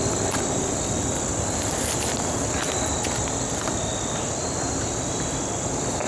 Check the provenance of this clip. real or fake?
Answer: real